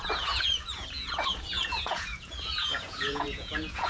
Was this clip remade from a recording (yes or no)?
yes